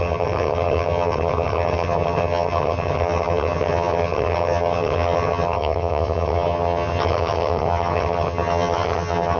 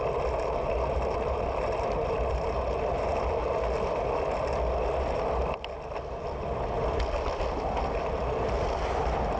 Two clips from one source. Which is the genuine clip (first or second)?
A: second